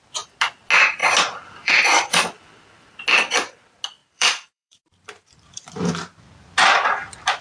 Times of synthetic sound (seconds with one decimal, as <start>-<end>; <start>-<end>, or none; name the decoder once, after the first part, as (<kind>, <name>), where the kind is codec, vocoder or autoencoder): 1.0-2.2 (vocoder, BigVGAN v2); 4.0-5.9